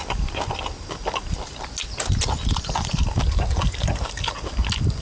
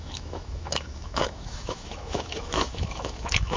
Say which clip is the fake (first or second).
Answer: second